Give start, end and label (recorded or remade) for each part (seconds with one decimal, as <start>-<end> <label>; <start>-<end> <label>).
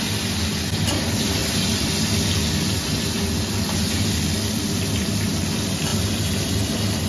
0.0-7.1 recorded